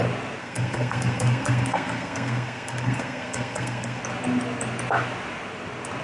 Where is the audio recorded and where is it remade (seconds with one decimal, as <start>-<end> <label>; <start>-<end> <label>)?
0.0-0.4 recorded; 0.4-4.0 remade; 4.0-6.0 recorded